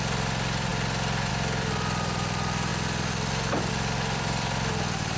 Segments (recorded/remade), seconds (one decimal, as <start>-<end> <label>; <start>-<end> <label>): 0.0-0.7 remade; 0.7-1.3 recorded; 1.3-2.7 remade; 2.7-3.7 recorded; 3.7-5.2 remade